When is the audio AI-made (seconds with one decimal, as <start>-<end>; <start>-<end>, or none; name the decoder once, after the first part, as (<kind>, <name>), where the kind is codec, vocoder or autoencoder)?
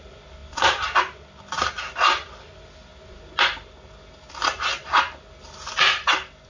none